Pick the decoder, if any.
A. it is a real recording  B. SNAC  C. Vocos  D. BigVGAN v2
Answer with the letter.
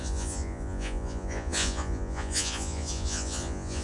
C